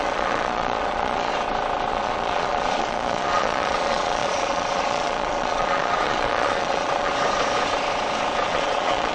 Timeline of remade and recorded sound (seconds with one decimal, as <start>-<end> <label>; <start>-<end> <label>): 0.0-1.3 remade; 1.3-1.9 recorded; 1.9-7.1 remade; 7.1-8.5 recorded; 8.5-9.1 remade